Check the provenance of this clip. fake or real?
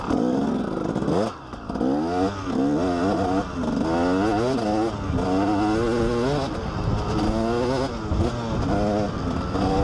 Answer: real